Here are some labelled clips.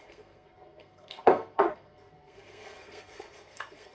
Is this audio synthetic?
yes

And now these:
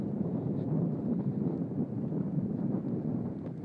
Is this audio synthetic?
no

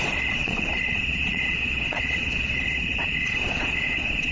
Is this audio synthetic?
yes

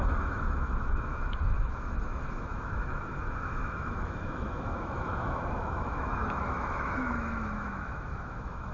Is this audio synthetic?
yes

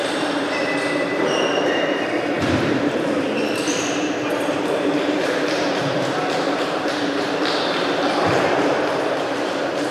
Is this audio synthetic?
yes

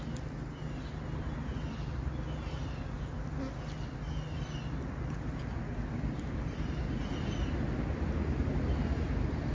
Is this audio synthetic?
no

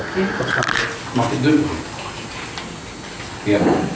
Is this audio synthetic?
no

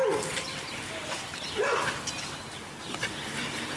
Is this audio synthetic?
no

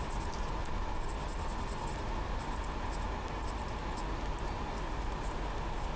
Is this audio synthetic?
no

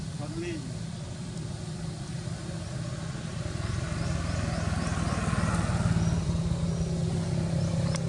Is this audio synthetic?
no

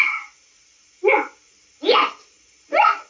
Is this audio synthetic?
no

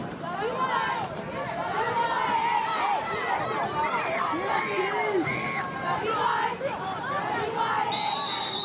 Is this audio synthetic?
no